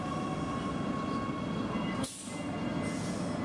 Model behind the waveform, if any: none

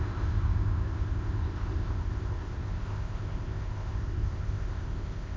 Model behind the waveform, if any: codec, ZipCodec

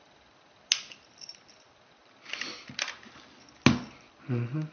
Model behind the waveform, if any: none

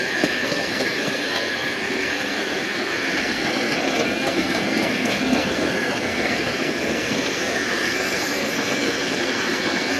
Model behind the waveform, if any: codec, SNAC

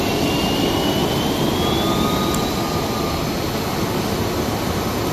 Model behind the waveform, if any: none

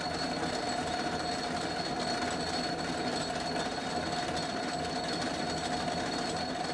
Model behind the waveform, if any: none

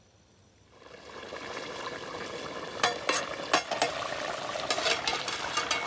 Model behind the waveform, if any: none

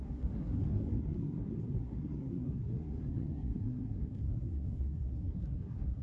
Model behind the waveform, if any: codec, SNAC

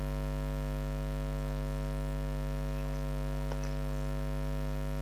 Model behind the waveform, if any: none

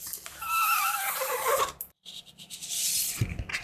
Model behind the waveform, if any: vocoder, BigVGAN v2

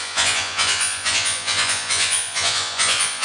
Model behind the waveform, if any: vocoder, Vocos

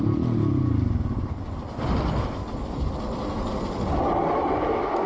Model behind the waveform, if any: none